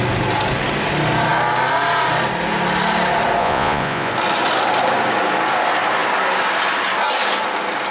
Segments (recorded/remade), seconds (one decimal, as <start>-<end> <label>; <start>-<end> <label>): 0.0-3.4 recorded; 3.4-4.1 remade; 4.1-7.9 recorded